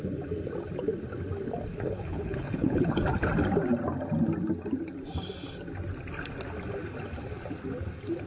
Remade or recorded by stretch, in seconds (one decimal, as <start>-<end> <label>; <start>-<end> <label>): 0.0-1.7 recorded; 1.7-3.0 remade; 3.0-8.3 recorded

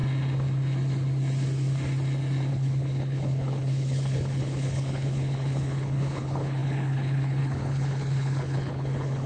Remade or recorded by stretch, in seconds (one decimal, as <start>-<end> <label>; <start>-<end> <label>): 0.0-2.5 recorded; 2.5-9.3 remade

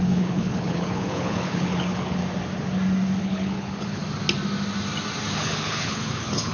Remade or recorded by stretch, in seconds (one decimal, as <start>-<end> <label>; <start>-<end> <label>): 0.0-2.2 remade; 2.2-3.2 recorded; 3.2-4.0 remade; 4.0-5.3 recorded; 5.3-6.5 remade

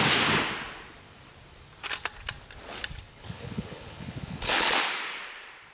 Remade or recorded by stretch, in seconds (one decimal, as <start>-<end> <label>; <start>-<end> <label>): 0.0-3.1 recorded; 3.1-4.7 remade; 4.7-5.7 recorded

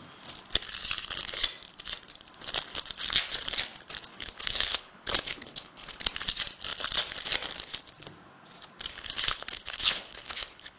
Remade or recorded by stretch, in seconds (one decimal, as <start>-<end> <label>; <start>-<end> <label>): 0.0-4.1 recorded; 4.1-6.0 remade; 6.0-8.9 recorded; 8.9-10.8 remade

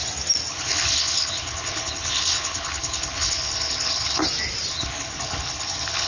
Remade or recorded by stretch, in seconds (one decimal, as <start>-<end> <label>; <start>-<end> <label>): 0.0-0.5 recorded; 0.5-4.2 remade; 4.2-4.7 recorded; 4.7-6.1 remade

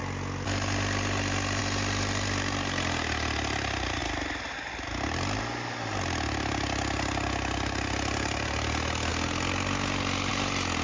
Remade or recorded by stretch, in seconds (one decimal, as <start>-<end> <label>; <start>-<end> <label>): 0.0-10.8 recorded

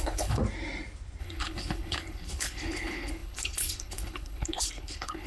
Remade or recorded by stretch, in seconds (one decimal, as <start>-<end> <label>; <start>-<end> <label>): 0.0-0.4 remade; 0.4-1.2 recorded; 1.2-5.3 remade